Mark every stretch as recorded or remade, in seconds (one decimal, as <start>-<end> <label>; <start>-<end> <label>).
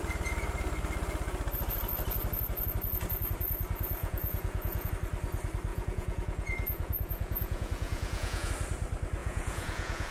0.0-4.0 recorded; 4.0-4.9 remade; 4.9-5.7 recorded; 5.7-8.5 remade; 8.5-9.2 recorded; 9.2-10.1 remade